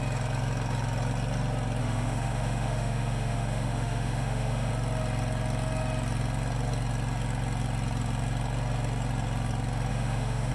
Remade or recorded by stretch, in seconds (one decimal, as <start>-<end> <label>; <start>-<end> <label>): 0.0-1.8 recorded; 1.8-4.7 remade; 4.7-9.9 recorded; 9.9-10.5 remade